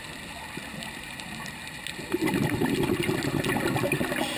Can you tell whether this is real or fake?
real